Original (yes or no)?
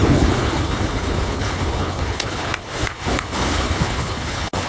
no